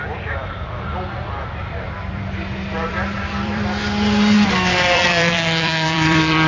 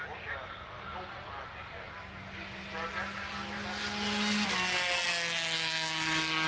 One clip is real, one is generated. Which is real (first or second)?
second